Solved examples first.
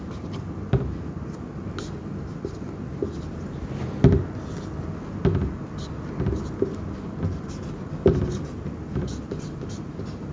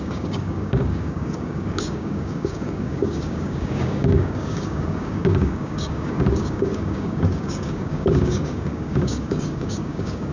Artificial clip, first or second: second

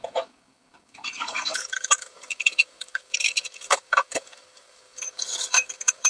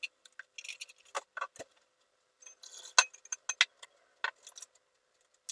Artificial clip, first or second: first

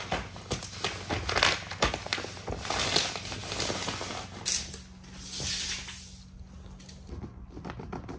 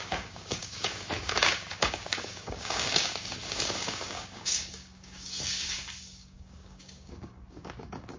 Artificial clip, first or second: second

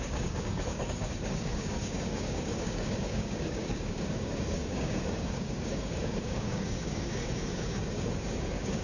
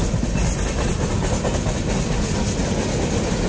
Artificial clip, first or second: first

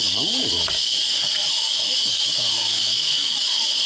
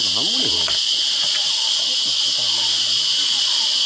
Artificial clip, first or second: first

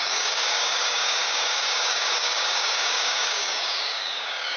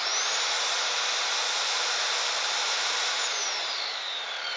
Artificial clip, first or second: first